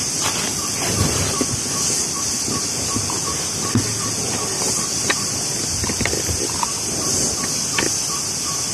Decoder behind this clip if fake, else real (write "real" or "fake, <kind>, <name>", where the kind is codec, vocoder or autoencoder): real